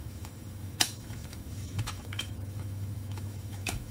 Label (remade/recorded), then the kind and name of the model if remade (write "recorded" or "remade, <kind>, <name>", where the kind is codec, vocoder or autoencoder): remade, autoencoder, DAC-VAE